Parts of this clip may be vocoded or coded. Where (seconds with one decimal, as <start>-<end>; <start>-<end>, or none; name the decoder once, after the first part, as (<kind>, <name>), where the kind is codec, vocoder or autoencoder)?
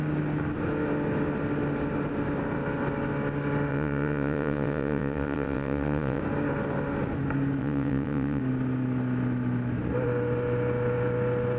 3.7-6.2 (vocoder, WaveNeXt); 7.6-8.4